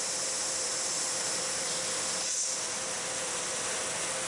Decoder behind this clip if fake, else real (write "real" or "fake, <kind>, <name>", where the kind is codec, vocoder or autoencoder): real